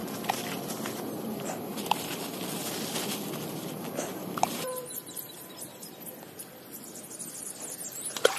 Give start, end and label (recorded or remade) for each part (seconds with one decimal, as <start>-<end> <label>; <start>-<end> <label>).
0.0-4.1 recorded; 4.1-4.7 remade; 4.7-8.4 recorded